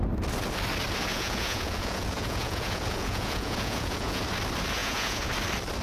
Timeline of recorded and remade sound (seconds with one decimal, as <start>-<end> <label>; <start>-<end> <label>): 0.0-1.1 recorded; 1.1-4.2 remade; 4.2-4.8 recorded; 4.8-5.3 remade; 5.3-5.8 recorded